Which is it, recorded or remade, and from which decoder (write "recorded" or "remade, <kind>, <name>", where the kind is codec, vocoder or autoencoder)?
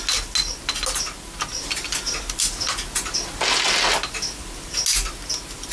recorded